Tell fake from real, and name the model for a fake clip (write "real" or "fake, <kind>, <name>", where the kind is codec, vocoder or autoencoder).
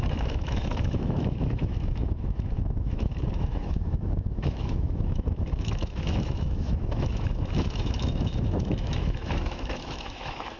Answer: fake, autoencoder, DAC-VAE